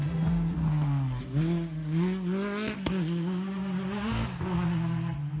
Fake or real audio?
real